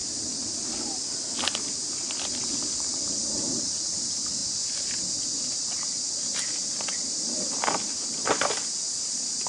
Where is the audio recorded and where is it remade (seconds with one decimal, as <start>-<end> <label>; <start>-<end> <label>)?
0.0-9.5 recorded